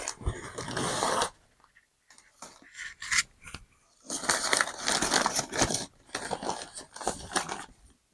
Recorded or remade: recorded